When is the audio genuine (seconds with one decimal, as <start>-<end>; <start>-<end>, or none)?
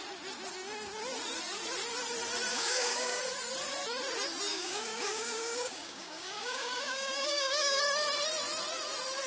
0.0-2.5; 3.2-4.5; 7.8-9.3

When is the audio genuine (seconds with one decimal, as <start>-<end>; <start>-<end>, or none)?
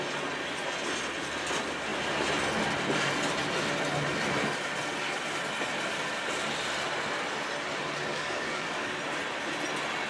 0.0-8.1; 8.9-10.1